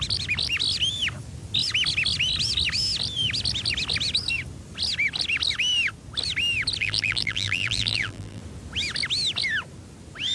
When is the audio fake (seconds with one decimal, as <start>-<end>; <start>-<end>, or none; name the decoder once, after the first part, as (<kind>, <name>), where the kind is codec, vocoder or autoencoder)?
6.8-8.4 (vocoder, BigVGAN v2)